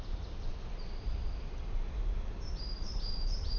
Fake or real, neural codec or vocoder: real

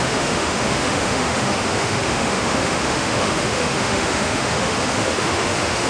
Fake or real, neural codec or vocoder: fake, autoencoder, DAC-VAE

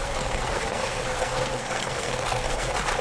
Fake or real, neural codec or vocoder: fake, codec, SNAC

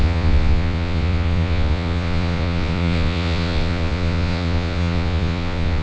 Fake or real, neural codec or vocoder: fake, vocoder, Vocos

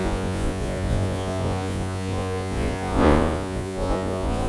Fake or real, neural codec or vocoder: fake, vocoder, Vocos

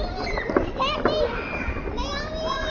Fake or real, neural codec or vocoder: real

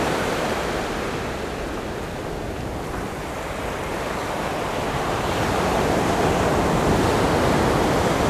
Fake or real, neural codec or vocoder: real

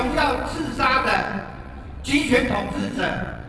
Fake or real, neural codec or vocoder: fake, vocoder, WaveNeXt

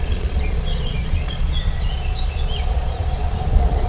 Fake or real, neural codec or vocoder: fake, vocoder, Vocos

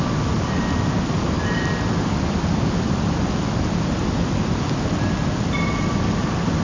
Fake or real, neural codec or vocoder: real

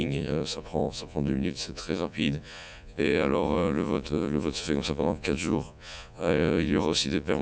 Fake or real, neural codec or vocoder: fake, vocoder, Vocos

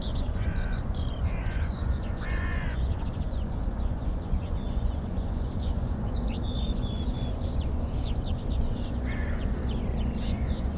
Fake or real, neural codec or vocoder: fake, vocoder, Vocos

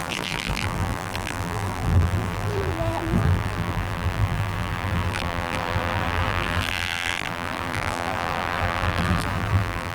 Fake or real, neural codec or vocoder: fake, vocoder, BigVGAN v2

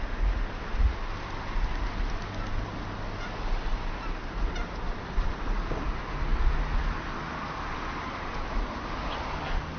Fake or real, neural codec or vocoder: real